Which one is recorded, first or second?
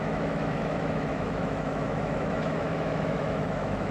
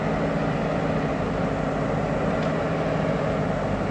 second